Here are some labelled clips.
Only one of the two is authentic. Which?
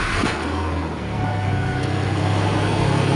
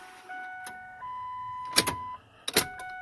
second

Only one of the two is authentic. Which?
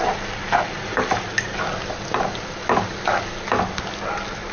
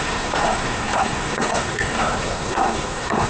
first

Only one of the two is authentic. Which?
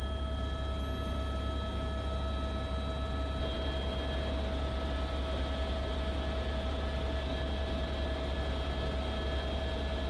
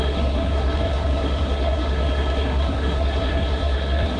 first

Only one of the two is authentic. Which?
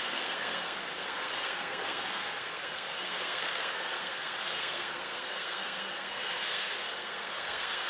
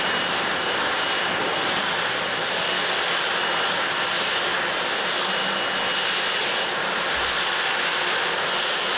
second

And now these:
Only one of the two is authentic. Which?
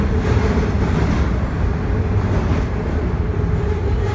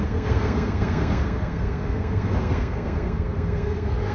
first